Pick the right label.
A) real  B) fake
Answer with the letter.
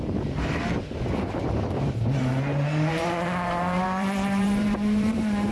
B